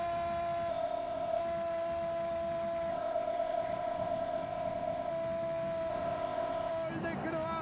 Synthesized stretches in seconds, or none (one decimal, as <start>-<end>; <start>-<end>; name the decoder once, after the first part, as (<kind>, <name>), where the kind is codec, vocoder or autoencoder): 0.7-1.4 (codec, ZipCodec); 2.9-5.1; 5.9-6.7